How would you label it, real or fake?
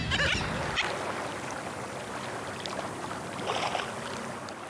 real